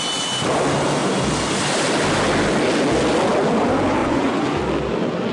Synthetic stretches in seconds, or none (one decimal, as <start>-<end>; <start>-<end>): 4.0-4.6